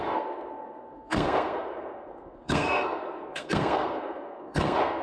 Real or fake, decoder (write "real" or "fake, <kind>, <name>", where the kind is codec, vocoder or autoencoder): fake, codec, SNAC